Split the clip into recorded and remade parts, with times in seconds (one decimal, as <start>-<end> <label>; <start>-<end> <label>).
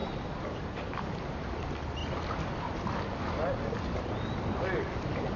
0.0-1.0 remade; 1.0-5.4 recorded